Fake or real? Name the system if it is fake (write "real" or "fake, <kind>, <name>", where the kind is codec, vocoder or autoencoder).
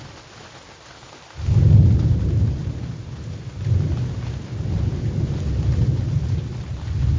real